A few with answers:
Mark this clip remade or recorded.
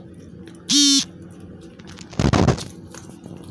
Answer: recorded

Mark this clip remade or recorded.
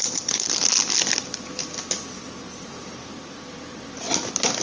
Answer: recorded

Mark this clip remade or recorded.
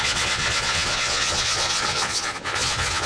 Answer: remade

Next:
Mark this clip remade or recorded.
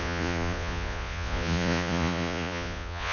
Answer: remade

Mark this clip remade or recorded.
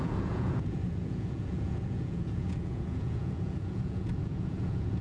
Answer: remade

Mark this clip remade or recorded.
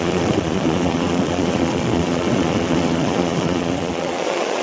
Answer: remade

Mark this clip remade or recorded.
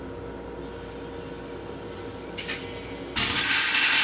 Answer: recorded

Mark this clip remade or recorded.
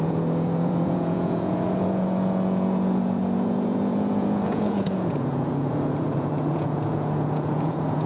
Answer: remade